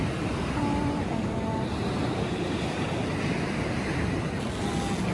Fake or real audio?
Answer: real